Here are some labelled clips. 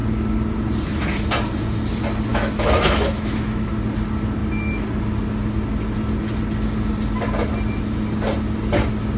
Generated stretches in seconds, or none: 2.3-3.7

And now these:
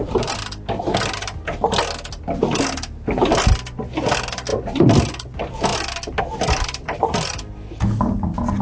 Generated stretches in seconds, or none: none